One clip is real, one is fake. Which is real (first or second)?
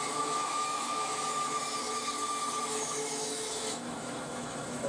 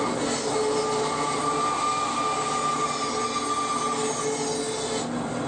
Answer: second